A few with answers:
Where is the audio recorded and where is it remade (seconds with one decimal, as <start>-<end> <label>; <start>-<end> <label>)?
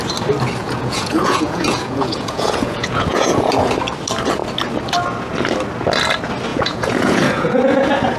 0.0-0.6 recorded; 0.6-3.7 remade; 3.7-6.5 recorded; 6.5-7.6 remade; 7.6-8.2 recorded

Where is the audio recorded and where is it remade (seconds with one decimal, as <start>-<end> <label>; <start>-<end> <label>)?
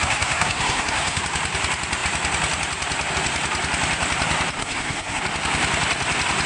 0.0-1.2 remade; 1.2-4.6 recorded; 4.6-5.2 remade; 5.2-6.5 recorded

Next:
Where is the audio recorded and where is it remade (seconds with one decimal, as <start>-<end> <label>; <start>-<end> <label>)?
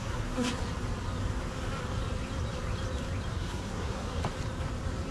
0.0-0.6 remade; 0.6-3.3 recorded; 3.3-4.2 remade; 4.2-5.1 recorded